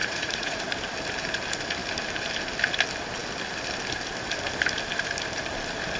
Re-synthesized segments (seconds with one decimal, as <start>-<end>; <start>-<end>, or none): 0.0-0.6